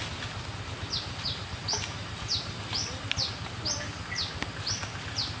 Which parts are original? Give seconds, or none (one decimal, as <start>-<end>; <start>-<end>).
0.0-5.4